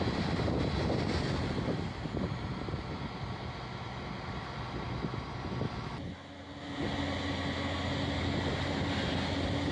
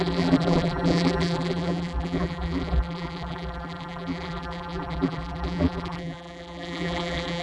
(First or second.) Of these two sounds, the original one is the first